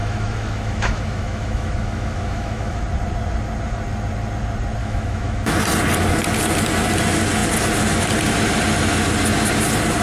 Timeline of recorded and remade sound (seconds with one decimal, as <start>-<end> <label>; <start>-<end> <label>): 0.0-2.8 remade; 2.8-4.8 recorded; 4.8-5.5 remade; 5.5-10.0 recorded